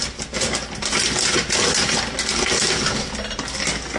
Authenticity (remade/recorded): recorded